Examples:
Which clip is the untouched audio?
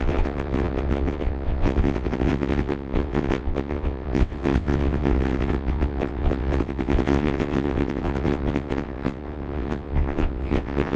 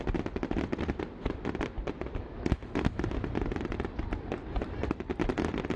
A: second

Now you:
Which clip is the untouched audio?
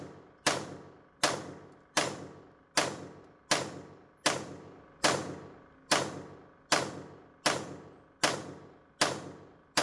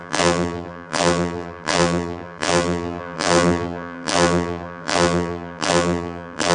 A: first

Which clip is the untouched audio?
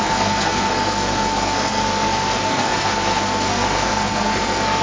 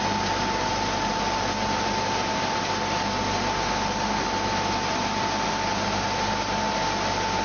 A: second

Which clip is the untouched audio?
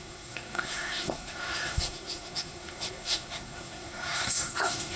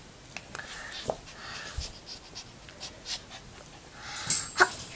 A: second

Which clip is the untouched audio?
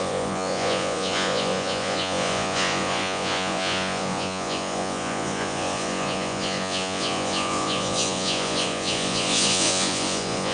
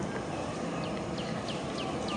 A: second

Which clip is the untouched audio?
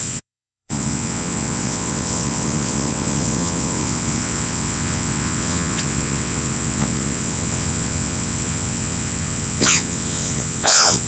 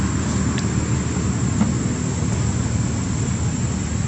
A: second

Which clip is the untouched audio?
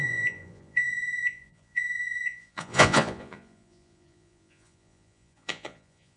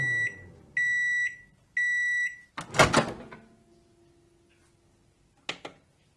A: second